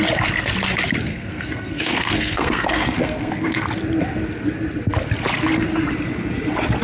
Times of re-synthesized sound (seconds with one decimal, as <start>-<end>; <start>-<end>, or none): 1.1-3.6